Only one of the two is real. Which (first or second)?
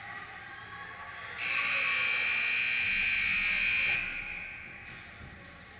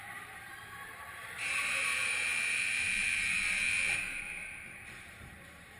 first